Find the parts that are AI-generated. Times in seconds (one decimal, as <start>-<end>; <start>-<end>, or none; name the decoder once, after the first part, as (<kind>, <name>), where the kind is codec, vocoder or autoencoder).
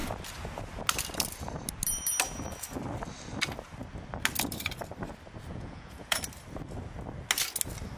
5.5-6.2 (vocoder, Vocos)